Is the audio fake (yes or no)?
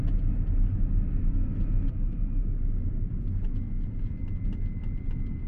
no